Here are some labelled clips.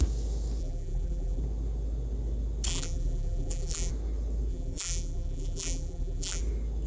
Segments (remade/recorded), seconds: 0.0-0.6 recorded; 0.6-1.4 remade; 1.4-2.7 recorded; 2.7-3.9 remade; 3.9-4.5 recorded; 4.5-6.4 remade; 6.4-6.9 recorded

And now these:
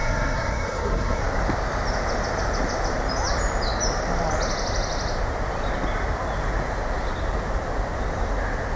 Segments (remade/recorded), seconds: 0.0-1.2 remade; 1.2-8.8 recorded

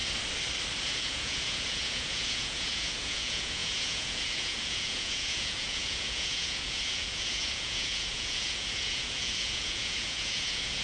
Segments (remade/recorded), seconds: 0.0-0.8 recorded; 0.8-10.8 remade